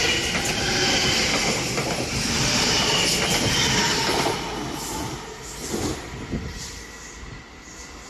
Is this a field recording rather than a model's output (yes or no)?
yes